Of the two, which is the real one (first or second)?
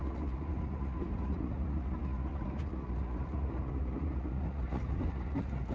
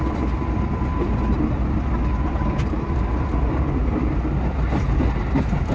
second